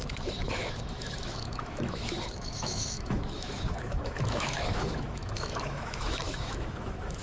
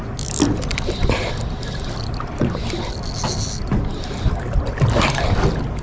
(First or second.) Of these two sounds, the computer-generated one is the first